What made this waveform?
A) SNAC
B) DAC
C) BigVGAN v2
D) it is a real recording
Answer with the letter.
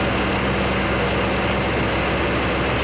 D